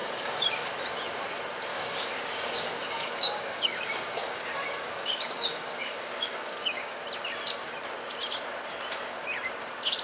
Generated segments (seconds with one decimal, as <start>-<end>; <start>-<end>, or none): 0.0-0.7; 1.7-7.0

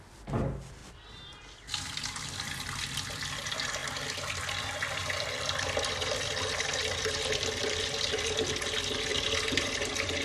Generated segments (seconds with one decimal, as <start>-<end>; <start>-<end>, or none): 0.8-1.4; 3.8-4.4; 5.0-6.3; 9.1-9.7

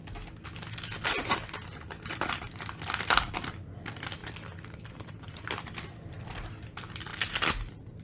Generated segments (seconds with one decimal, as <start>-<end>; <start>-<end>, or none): 2.9-4.2; 4.8-7.1

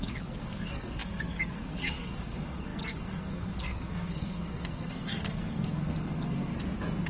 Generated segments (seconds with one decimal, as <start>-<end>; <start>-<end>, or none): 0.0-6.5

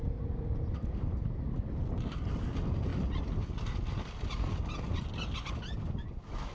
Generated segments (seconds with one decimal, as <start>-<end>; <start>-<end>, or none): none

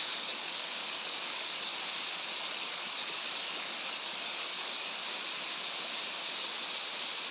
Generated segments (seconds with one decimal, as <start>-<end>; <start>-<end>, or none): 0.0-1.7; 2.5-5.0

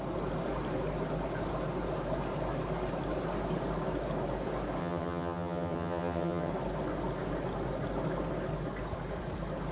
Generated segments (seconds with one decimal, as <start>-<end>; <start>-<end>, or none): 4.8-6.5